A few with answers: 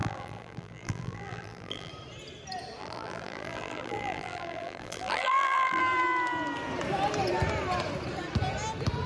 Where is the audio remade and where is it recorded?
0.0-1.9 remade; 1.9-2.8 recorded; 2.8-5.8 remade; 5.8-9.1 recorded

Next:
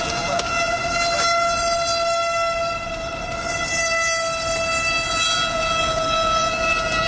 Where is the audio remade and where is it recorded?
0.0-0.8 remade; 0.8-5.1 recorded; 5.1-7.1 remade

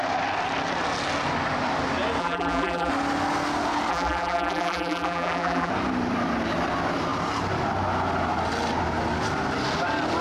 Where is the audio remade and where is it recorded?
0.0-2.2 recorded; 2.2-2.9 remade; 2.9-3.9 recorded; 3.9-5.7 remade; 5.7-10.2 recorded